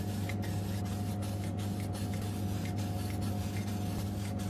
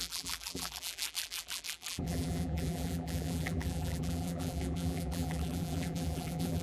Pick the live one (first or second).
first